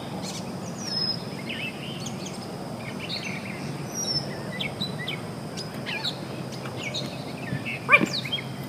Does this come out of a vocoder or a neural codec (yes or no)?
no